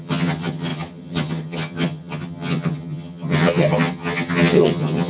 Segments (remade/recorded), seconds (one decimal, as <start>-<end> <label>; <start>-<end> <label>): 0.0-5.1 remade

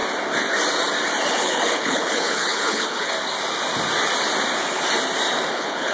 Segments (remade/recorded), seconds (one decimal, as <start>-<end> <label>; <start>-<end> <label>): 0.0-1.3 recorded; 1.3-3.1 remade; 3.1-5.5 recorded; 5.5-5.9 remade

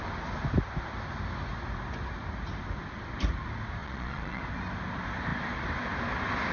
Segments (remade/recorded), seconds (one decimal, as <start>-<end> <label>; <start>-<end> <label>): 0.0-3.8 recorded; 3.8-4.4 remade; 4.4-6.5 recorded